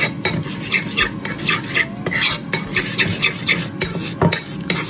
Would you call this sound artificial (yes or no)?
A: no